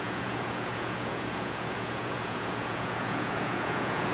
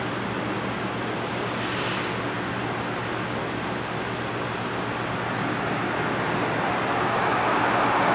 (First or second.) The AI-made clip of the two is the first